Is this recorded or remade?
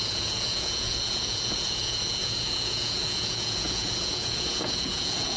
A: remade